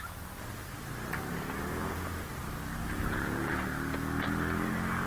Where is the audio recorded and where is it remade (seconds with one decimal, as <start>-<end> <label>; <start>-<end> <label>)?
0.0-2.8 recorded; 2.8-3.5 remade; 3.5-5.1 recorded